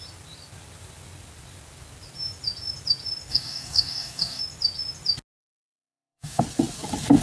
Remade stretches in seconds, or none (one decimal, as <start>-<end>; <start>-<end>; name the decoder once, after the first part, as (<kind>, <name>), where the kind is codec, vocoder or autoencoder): 3.3-4.4 (codec, DAC); 5.4-6.4